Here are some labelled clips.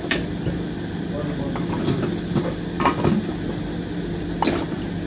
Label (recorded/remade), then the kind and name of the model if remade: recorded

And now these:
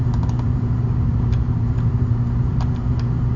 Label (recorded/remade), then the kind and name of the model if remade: remade, vocoder, BigVGAN v2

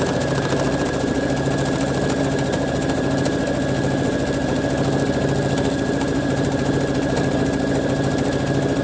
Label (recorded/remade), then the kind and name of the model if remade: recorded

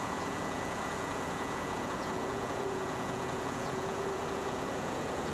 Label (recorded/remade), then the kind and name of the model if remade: remade, vocoder, Vocos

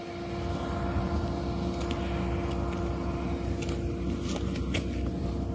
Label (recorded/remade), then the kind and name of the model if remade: recorded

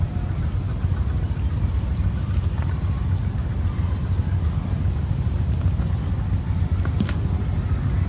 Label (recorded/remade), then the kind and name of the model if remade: recorded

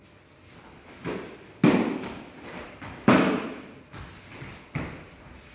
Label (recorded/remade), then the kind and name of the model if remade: recorded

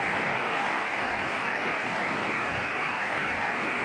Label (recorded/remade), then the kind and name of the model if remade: remade, codec, DAC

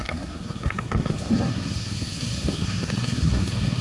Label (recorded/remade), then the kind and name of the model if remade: remade, codec, SNAC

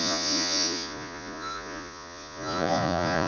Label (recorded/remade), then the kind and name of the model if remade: remade, vocoder, Vocos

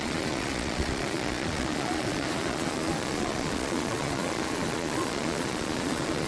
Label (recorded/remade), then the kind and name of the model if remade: remade, vocoder, Vocos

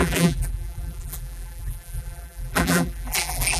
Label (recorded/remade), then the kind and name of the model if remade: remade, vocoder, BigVGAN v2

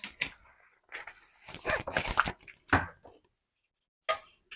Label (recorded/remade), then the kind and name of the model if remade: recorded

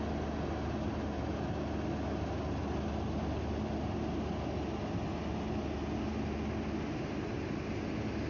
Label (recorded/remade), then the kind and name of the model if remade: recorded